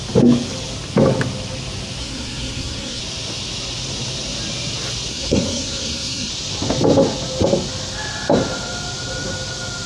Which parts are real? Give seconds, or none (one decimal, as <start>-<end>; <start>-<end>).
0.0-2.0; 3.0-5.1; 6.3-9.9